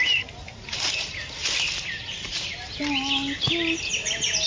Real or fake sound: real